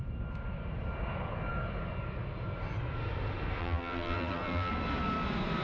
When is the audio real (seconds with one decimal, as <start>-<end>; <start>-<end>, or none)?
0.0-3.6; 4.7-5.6

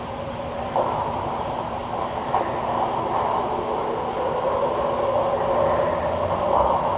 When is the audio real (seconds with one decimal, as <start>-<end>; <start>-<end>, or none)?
1.8-6.0

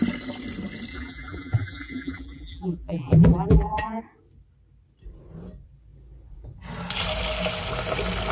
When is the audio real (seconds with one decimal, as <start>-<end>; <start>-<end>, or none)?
0.0-0.9; 4.0-8.3

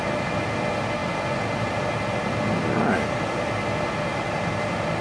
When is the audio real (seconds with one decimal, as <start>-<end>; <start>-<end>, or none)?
0.0-5.0

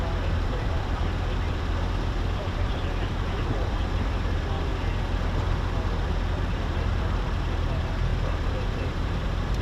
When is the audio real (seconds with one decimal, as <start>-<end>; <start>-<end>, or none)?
4.7-6.1

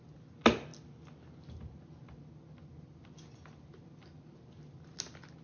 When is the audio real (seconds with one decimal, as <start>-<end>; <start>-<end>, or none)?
0.0-5.4

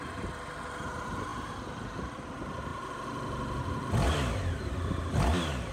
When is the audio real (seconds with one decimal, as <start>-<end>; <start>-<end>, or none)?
0.0-2.7; 3.8-5.7

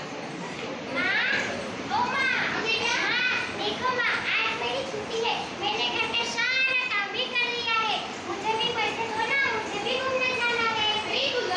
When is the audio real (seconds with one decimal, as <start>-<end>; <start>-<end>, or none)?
4.4-7.5